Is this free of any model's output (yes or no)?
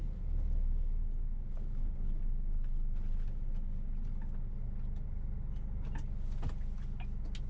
yes